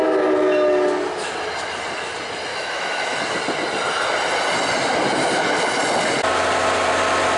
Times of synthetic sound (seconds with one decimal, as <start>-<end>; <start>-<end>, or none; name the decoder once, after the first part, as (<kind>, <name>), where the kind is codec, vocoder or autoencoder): 2.5-3.2 (autoencoder, DAC-VAE)